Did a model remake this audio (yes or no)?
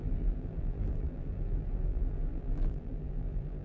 yes